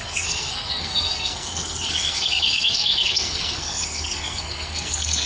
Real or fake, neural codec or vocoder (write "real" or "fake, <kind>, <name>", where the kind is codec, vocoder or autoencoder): fake, codec, SNAC